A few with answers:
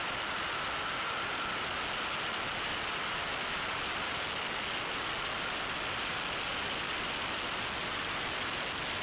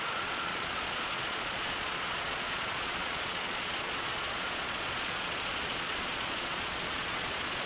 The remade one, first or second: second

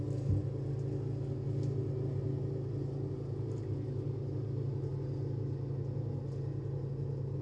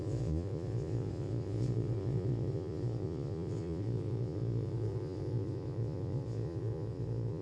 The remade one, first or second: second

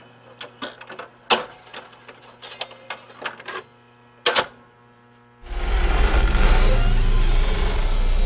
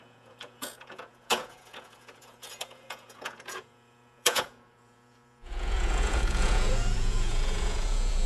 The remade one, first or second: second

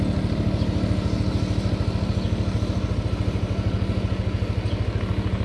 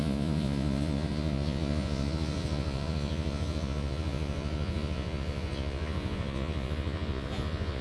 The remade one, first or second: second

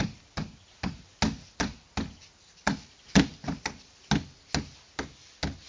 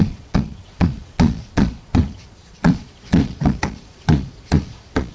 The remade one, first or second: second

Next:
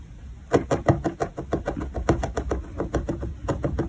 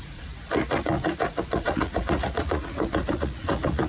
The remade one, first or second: second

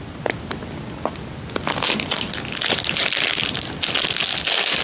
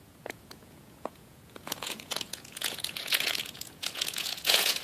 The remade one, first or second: second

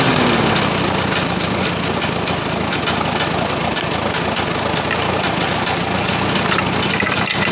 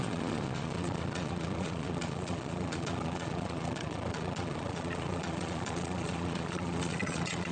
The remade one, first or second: second